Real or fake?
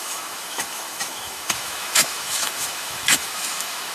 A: fake